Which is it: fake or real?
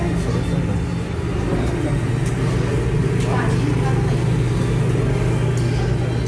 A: real